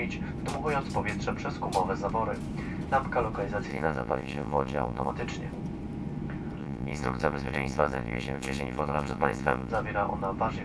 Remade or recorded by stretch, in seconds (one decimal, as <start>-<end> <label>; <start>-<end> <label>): 0.0-3.7 recorded; 3.7-5.1 remade; 5.1-6.6 recorded; 6.6-9.7 remade; 9.7-10.6 recorded